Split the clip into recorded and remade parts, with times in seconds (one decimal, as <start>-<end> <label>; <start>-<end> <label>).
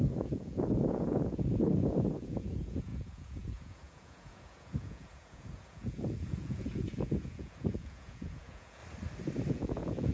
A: 0.0-8.8 remade; 8.8-9.5 recorded; 9.5-10.1 remade